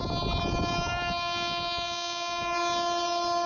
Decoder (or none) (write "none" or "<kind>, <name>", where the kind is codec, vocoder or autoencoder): none